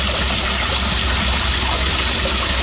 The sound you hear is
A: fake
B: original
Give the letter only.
B